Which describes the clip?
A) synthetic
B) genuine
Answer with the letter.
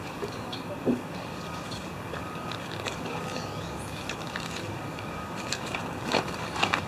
A